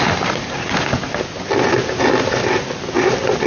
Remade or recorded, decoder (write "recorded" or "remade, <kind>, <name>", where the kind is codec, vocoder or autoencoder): recorded